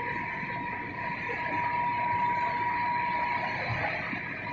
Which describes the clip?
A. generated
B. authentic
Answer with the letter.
B